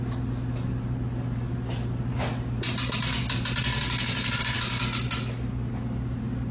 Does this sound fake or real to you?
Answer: real